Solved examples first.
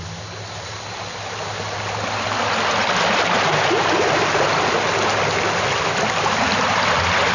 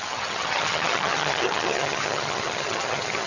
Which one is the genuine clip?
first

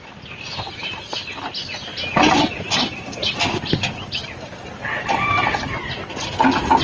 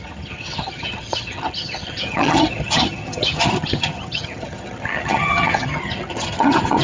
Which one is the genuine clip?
first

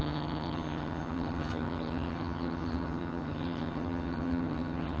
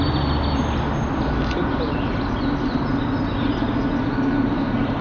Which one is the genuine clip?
second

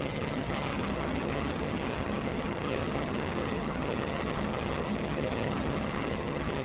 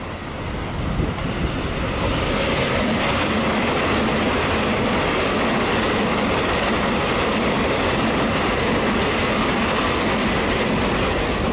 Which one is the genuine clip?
second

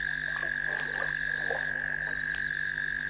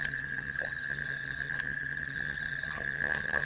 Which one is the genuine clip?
first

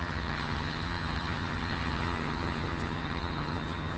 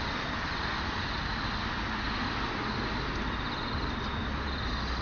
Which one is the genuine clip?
second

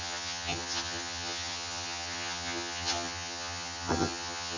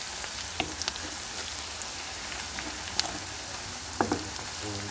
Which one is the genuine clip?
second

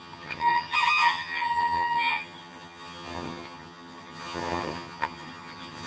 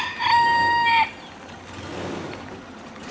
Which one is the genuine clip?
second